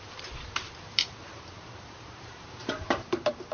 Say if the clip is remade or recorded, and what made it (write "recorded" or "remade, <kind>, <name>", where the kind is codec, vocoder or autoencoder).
remade, vocoder, BigVGAN v2